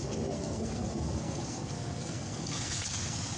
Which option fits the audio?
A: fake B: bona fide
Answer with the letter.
A